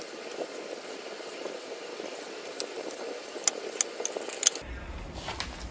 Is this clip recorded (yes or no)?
yes